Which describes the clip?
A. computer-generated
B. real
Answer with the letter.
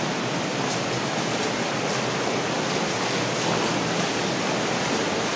B